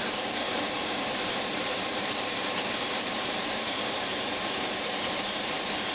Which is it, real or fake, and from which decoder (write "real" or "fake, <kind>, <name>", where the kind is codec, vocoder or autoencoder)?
fake, vocoder, BigVGAN v2